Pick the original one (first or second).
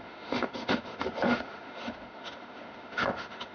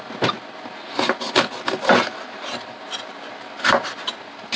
second